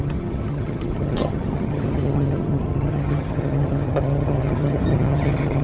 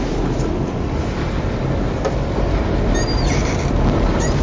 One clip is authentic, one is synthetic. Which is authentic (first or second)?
second